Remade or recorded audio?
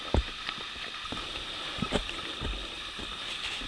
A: recorded